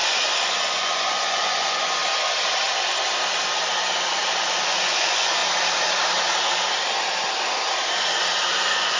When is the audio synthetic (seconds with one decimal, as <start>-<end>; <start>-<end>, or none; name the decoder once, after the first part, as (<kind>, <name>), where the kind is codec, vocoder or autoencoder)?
0.0-2.0 (vocoder, Vocos); 4.5-5.4; 8.6-9.0